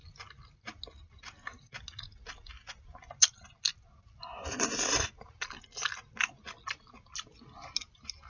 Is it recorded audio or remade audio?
recorded